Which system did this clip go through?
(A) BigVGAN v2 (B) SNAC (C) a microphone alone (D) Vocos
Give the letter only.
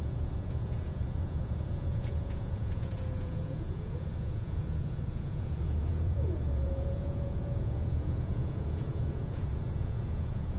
D